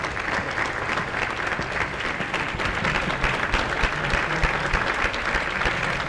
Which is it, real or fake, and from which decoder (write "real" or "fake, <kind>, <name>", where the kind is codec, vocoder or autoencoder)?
real